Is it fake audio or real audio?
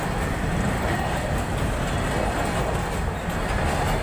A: real